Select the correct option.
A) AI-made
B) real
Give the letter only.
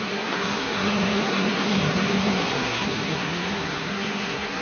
A